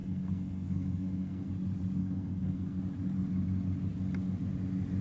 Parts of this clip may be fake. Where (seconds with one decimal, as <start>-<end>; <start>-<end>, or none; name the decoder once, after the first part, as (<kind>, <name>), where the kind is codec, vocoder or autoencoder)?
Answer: 0.0-1.5 (codec, SNAC); 2.0-2.8